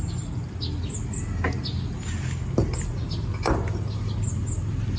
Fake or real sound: real